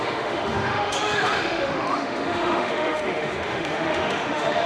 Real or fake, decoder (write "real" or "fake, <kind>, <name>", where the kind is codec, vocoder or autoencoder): fake, autoencoder, DAC-VAE